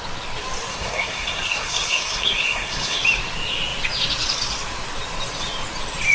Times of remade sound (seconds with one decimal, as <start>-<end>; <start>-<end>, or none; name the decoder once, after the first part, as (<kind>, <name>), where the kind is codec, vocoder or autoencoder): 0.7-3.0 (codec, SNAC)